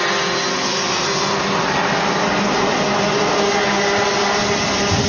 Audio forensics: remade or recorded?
recorded